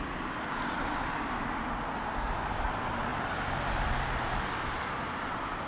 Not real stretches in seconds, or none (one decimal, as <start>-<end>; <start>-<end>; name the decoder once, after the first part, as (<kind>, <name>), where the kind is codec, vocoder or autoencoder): none